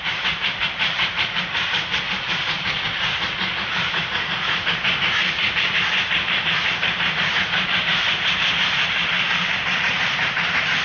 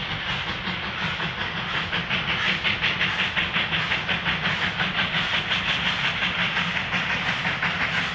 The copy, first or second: first